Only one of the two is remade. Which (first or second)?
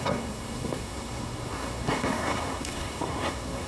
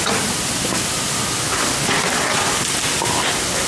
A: first